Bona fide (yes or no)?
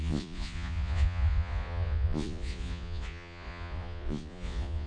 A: no